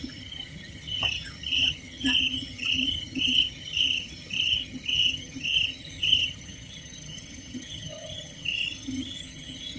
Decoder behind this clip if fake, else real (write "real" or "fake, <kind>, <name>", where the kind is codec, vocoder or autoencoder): fake, vocoder, HiFi-GAN